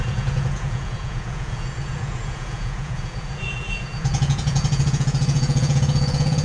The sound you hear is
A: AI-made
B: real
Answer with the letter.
A